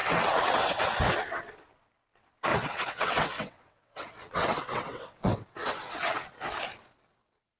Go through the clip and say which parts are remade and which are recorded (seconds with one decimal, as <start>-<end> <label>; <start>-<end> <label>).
0.0-1.0 remade; 1.0-2.5 recorded; 2.5-6.3 remade; 6.3-7.6 recorded